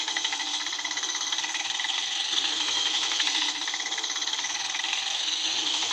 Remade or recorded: remade